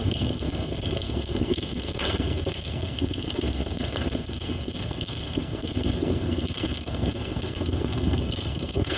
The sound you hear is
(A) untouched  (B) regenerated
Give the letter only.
B